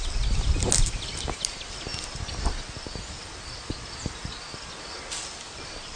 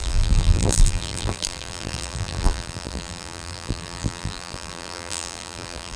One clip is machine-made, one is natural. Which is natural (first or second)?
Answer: first